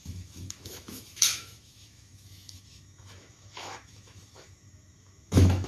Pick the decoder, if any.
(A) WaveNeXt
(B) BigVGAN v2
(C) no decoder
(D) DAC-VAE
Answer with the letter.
D